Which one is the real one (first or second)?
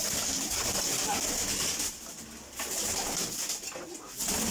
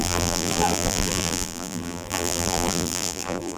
first